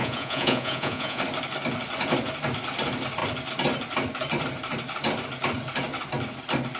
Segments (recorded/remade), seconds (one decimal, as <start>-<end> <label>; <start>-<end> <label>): 0.0-1.2 remade; 1.2-6.8 recorded